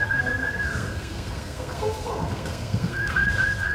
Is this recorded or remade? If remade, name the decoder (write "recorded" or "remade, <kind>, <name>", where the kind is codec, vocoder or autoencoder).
remade, codec, SNAC